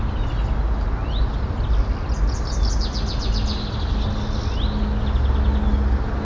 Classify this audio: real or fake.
real